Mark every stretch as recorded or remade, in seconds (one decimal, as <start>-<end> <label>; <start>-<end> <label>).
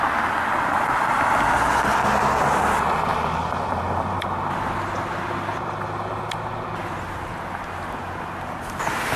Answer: 0.0-3.1 recorded; 3.1-4.8 remade; 4.8-5.5 recorded; 5.5-6.1 remade; 6.1-9.2 recorded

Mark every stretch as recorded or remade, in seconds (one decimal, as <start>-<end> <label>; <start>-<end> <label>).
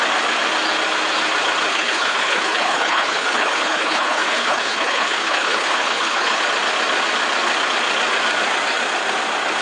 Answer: 0.0-1.7 recorded; 1.7-6.4 remade; 6.4-9.6 recorded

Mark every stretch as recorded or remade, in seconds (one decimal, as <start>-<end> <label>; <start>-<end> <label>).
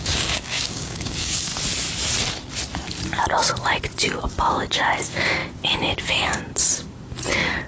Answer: 0.0-1.5 remade; 1.5-4.2 recorded; 4.2-5.4 remade; 5.4-6.0 recorded; 6.0-6.5 remade; 6.5-7.7 recorded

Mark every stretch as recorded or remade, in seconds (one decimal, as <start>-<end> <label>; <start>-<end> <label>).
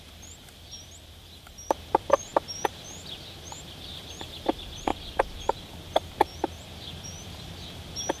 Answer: 0.0-8.2 remade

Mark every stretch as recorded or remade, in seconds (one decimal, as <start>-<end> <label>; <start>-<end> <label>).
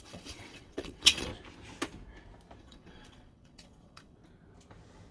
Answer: 0.0-1.3 remade; 1.3-2.6 recorded; 2.6-4.2 remade; 4.2-5.1 recorded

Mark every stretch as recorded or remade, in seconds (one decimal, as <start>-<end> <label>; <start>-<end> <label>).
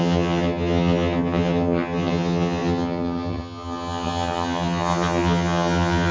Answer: 0.0-6.1 remade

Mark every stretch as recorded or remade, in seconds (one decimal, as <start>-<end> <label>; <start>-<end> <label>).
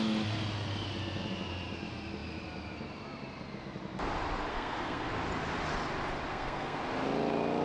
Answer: 0.0-4.5 recorded; 4.5-5.1 remade; 5.1-6.3 recorded; 6.3-6.8 remade; 6.8-7.6 recorded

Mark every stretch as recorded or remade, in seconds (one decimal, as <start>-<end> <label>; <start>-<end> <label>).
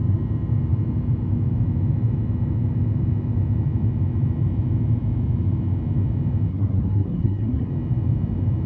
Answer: 0.0-6.5 recorded; 6.5-7.7 remade; 7.7-8.7 recorded